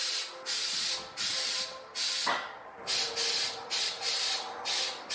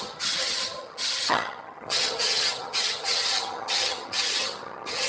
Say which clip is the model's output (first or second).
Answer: second